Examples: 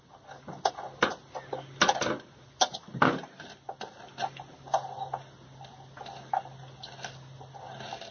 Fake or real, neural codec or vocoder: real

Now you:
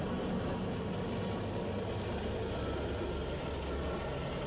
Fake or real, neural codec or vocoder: real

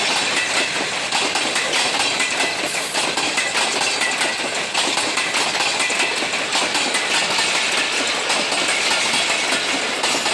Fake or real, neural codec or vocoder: real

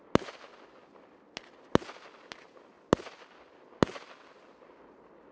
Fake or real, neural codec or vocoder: real